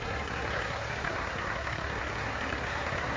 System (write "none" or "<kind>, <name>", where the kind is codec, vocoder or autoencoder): codec, SNAC